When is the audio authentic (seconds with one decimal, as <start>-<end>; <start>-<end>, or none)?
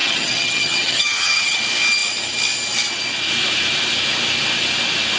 1.6-5.2